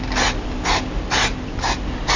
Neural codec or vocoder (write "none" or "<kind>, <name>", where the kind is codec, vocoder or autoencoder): none